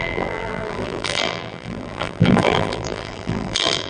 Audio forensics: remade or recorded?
remade